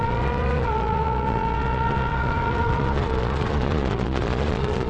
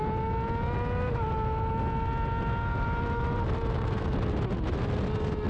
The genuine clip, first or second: second